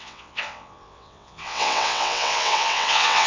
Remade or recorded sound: remade